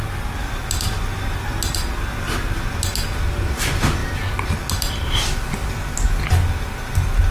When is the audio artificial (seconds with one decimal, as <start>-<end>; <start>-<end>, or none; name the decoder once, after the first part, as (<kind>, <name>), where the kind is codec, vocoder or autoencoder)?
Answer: none